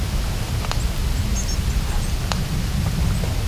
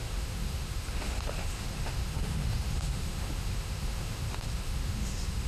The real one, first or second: first